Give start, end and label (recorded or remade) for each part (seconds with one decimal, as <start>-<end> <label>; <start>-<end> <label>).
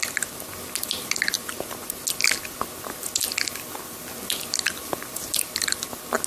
0.0-4.8 recorded; 4.8-5.4 remade; 5.4-6.3 recorded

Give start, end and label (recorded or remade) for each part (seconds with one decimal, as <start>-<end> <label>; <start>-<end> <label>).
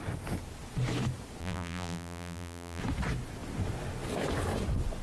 0.0-1.4 recorded; 1.4-2.8 remade; 2.8-5.0 recorded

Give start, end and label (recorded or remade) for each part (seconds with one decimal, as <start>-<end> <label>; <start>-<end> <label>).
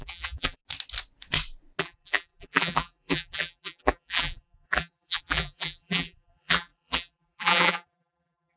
0.0-0.6 remade; 0.6-1.8 recorded; 1.8-8.6 remade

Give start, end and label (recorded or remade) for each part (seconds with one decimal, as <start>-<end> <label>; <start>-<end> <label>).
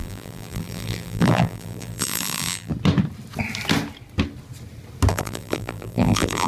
0.0-2.7 remade; 2.7-5.1 recorded; 5.1-6.5 remade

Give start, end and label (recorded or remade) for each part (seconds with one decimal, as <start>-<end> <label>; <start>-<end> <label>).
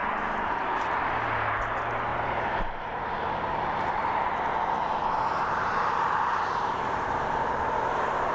0.0-1.0 remade; 1.0-2.1 recorded; 2.1-7.1 remade; 7.1-8.3 recorded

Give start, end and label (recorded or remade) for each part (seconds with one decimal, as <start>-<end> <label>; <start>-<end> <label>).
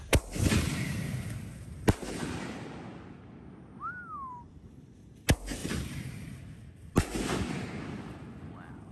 0.0-5.6 recorded; 5.6-6.4 remade; 6.4-8.9 recorded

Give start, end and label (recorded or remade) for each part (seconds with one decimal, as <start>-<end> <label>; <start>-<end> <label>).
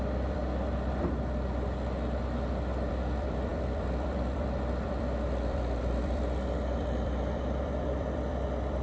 0.0-0.4 remade; 0.4-2.9 recorded; 2.9-8.8 remade